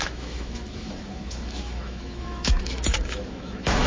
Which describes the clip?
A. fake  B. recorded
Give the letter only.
A